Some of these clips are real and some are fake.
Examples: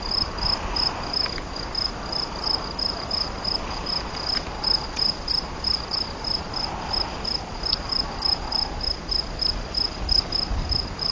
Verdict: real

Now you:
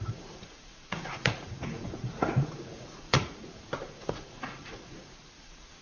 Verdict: fake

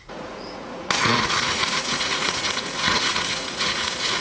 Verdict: fake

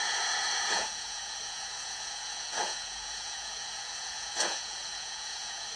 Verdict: fake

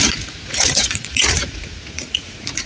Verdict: fake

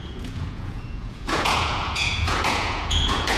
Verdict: fake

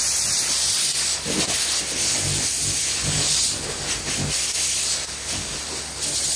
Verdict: real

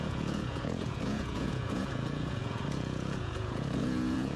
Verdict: fake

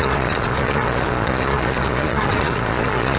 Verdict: fake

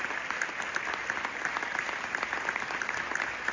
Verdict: real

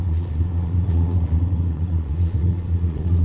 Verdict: fake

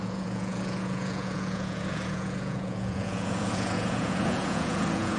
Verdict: fake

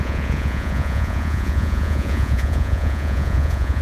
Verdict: fake